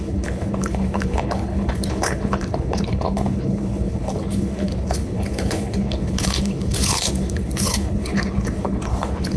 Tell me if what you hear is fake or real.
fake